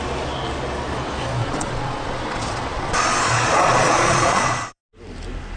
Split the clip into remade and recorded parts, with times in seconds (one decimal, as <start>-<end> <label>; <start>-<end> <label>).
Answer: 0.0-1.4 recorded; 1.4-4.8 remade; 4.8-5.6 recorded